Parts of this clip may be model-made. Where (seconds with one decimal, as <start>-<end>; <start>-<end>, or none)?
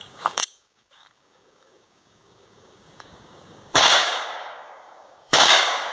0.0-5.9